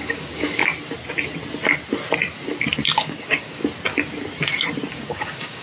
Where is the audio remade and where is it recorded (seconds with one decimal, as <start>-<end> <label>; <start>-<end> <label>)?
0.0-0.6 remade; 0.6-2.9 recorded; 2.9-3.6 remade; 3.6-4.9 recorded; 4.9-5.6 remade